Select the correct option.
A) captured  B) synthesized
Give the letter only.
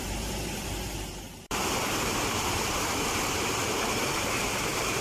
B